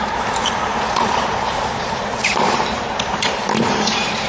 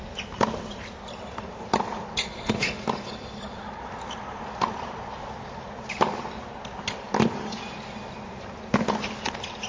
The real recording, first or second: second